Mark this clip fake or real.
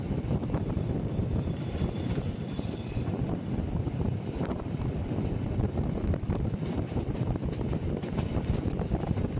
fake